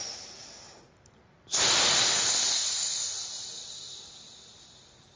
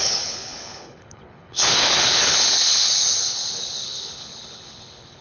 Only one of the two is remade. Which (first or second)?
second